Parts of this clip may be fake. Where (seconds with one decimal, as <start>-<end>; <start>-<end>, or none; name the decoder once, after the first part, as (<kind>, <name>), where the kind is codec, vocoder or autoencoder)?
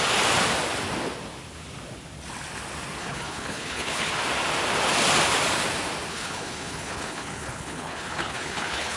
3.0-4.1 (codec, HILCodec); 6.1-9.0